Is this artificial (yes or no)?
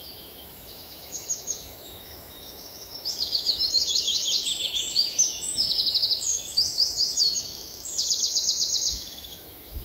yes